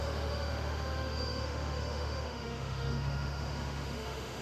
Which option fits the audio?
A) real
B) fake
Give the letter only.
B